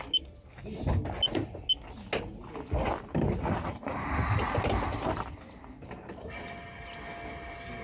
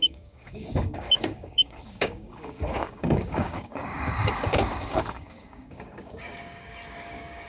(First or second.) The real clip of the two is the first